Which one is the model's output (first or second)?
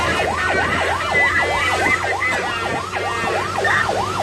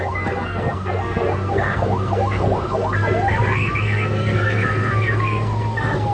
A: second